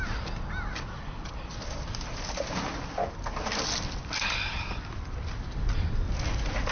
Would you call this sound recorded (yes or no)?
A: yes